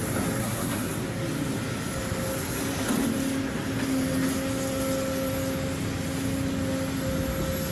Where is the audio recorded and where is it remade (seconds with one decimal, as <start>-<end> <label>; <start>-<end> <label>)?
0.0-0.4 recorded; 0.4-0.9 remade; 0.9-7.7 recorded